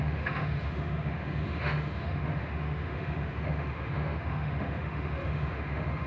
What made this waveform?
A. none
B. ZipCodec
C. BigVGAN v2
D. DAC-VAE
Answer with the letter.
D